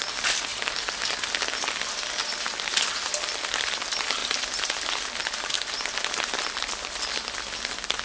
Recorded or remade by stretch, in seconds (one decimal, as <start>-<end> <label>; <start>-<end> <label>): 0.0-8.0 recorded